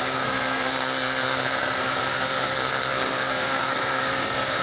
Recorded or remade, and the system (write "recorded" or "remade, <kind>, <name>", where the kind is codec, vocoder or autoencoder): remade, codec, SNAC